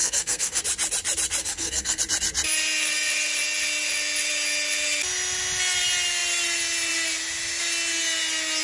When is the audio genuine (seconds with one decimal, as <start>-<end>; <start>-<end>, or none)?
0.6-1.4; 2.0-8.6